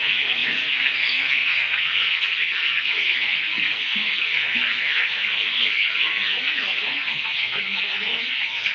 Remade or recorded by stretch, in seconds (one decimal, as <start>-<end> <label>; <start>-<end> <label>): 0.0-8.7 remade